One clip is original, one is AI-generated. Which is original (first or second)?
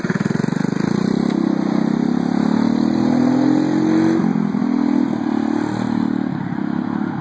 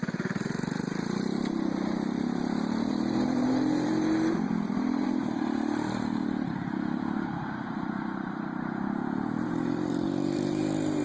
first